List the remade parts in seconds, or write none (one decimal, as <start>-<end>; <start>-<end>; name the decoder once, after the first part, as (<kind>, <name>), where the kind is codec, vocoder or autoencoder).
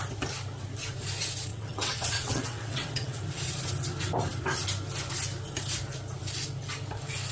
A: 1.5-3.2 (vocoder, WaveNeXt)